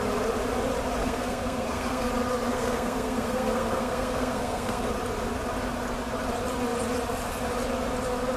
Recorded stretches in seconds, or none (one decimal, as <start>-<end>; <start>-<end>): 0.0-1.0; 2.1-2.5; 4.8-8.4